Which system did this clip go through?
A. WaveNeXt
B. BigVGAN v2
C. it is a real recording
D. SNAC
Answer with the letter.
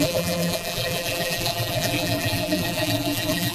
B